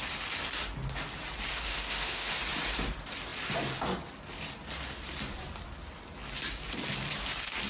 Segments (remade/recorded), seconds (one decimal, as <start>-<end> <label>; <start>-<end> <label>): 0.0-1.5 recorded; 1.5-2.3 remade; 2.3-7.7 recorded